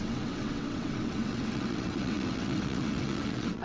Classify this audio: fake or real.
fake